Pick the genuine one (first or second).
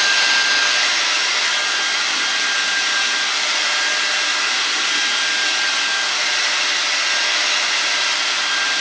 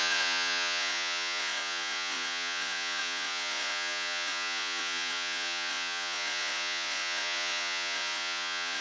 first